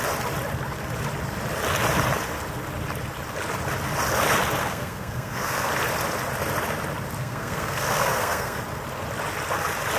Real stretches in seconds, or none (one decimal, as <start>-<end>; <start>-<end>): 0.0-4.6; 5.7-7.2; 8.6-10.0

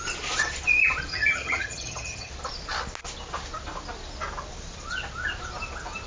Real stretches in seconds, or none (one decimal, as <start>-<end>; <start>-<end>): 0.0-1.1; 2.3-6.1

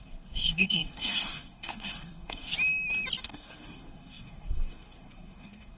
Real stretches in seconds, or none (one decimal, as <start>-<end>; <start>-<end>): 2.5-3.2

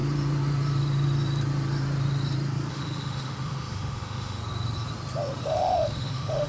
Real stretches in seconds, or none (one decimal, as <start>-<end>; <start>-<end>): 0.0-2.7; 4.4-5.4

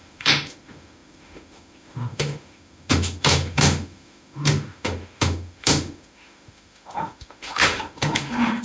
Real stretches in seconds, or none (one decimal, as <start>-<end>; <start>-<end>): none

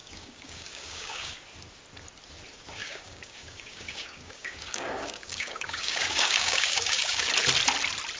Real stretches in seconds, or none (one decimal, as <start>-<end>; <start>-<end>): 1.3-2.8; 7.3-8.2

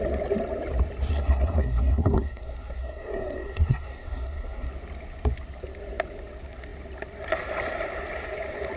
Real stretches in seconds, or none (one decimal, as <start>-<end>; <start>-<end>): 0.0-1.1; 4.7-8.8